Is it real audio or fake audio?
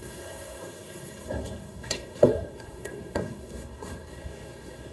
fake